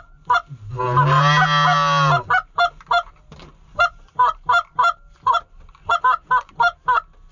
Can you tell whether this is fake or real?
real